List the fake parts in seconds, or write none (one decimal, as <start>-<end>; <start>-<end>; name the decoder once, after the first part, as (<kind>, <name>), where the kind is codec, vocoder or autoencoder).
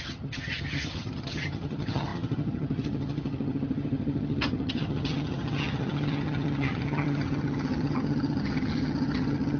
0.0-9.6 (vocoder, HiFi-GAN)